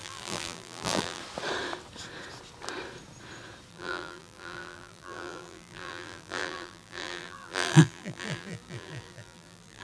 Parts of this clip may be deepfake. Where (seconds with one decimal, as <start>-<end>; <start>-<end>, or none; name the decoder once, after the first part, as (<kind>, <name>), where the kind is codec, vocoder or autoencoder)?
0.0-1.2 (vocoder, BigVGAN v2); 3.7-9.8